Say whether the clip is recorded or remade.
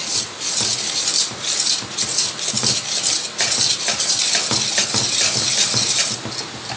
recorded